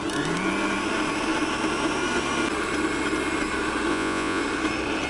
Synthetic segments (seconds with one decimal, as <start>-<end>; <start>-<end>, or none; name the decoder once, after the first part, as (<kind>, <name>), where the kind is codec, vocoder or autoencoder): 3.9-4.4 (vocoder, Vocos)